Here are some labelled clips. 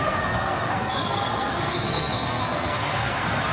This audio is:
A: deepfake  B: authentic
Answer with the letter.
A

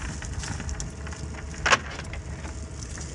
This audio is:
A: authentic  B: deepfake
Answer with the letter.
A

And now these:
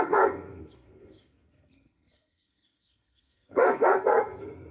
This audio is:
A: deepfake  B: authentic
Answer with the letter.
A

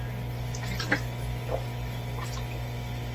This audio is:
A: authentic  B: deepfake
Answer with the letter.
A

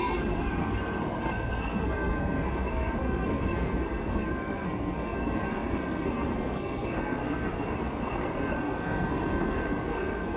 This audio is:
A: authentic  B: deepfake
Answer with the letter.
B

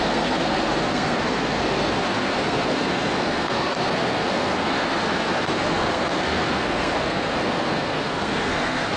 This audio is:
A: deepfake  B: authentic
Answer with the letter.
A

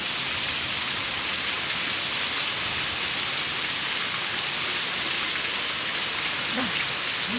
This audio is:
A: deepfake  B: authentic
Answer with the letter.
B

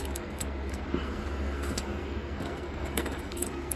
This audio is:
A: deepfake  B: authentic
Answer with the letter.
A